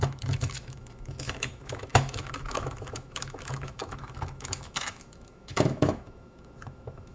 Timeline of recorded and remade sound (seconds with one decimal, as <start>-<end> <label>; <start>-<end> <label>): 0.0-7.1 remade